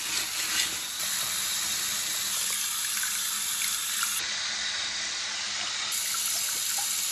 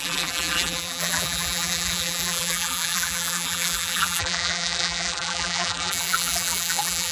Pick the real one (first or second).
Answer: first